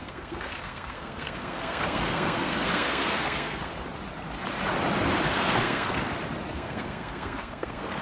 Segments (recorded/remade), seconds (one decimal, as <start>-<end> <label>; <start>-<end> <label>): 0.0-3.7 remade; 3.7-5.3 recorded; 5.3-6.0 remade; 6.0-6.5 recorded; 6.5-8.0 remade